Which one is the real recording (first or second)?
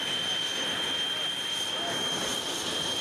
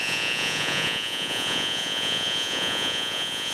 first